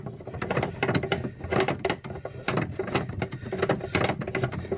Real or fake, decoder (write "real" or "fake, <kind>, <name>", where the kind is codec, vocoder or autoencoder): real